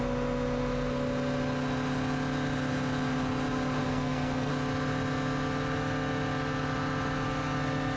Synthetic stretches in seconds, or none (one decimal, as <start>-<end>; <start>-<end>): 3.8-4.5